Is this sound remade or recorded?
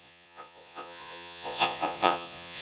remade